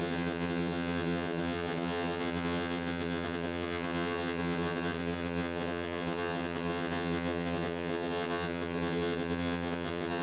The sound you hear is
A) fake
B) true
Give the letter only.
A